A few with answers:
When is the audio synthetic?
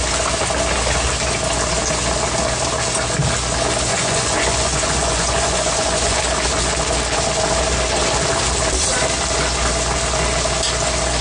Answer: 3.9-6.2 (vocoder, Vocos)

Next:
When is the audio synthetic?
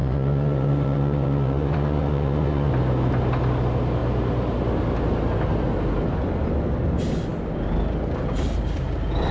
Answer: 0.0-2.7 (vocoder, Vocos)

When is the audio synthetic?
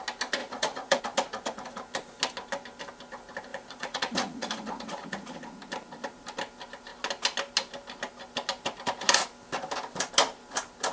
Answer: 0.4-1.0 (vocoder, Vocos); 3.5-5.4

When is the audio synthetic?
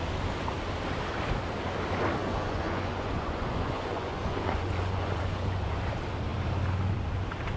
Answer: 2.2-5.8 (vocoder, Vocos)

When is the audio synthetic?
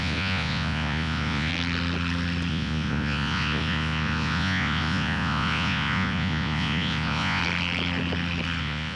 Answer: 0.0-1.5 (vocoder, Vocos); 2.5-7.4; 8.6-9.0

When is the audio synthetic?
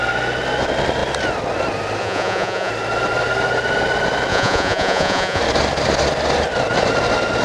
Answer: 2.0-2.7 (vocoder, Vocos); 4.3-5.4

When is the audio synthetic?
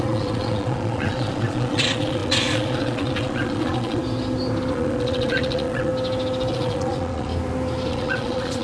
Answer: 0.0-4.0 (vocoder, Vocos); 4.7-5.9; 6.5-7.3; 7.9-8.6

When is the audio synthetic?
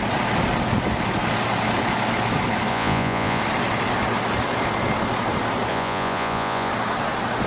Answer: 2.7-3.4 (vocoder, Vocos); 5.7-6.7